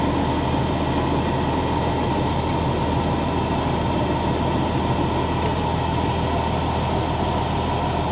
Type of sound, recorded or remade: recorded